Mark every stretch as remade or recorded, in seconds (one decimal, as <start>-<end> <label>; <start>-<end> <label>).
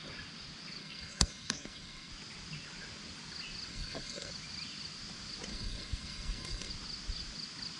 0.0-0.8 recorded; 0.8-2.1 remade; 2.1-3.7 recorded; 3.7-4.3 remade; 4.3-5.5 recorded; 5.5-6.7 remade; 6.7-7.8 recorded